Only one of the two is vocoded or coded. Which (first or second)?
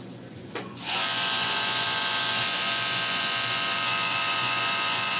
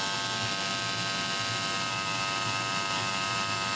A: first